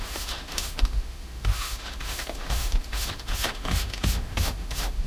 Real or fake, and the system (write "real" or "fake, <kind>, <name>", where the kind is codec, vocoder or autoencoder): fake, autoencoder, DAC-VAE